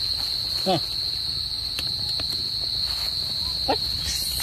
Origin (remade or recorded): recorded